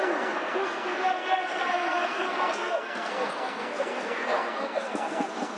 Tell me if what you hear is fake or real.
fake